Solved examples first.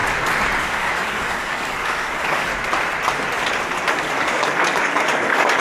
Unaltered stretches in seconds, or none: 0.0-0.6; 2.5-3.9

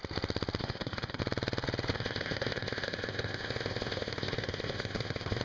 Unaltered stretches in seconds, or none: 0.0-0.6; 1.2-1.9